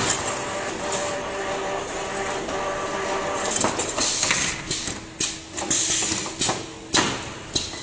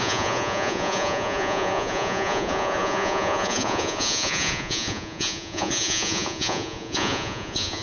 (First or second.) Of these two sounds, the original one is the first